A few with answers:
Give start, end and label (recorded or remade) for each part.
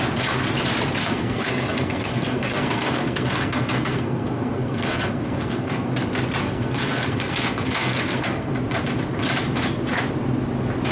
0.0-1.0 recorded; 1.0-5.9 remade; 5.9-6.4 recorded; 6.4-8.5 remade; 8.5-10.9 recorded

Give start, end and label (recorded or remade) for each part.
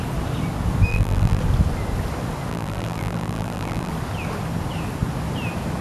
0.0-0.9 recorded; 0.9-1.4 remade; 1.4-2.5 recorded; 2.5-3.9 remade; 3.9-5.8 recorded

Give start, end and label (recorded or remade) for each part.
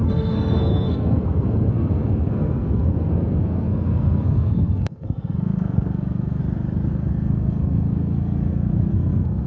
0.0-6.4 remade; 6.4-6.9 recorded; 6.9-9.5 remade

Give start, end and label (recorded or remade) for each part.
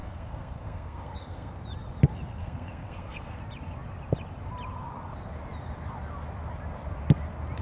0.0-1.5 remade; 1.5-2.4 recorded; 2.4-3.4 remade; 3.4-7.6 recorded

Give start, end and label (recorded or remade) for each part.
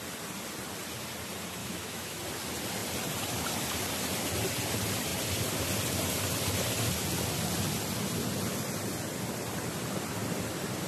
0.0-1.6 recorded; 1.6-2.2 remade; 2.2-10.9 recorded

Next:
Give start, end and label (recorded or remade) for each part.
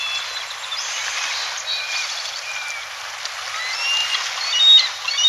0.0-5.3 recorded